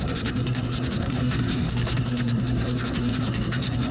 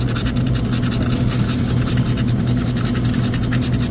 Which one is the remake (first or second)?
first